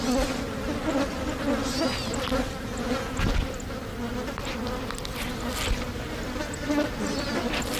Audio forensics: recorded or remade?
recorded